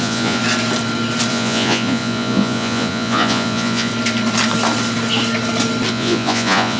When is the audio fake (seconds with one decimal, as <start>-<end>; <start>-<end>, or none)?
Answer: 0.0-0.4; 1.3-3.9; 5.9-6.8